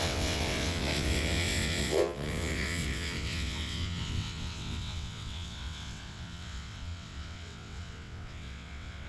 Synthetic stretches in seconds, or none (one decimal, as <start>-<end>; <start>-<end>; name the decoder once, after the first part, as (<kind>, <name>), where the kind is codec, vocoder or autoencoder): 0.0-9.1 (vocoder, WaveNeXt)